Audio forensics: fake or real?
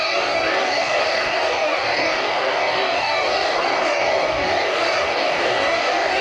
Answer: fake